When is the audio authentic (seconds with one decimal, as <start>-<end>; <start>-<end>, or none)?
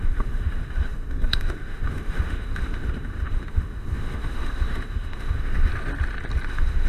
5.7-6.5